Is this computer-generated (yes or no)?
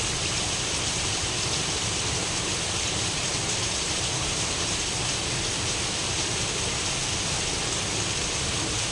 no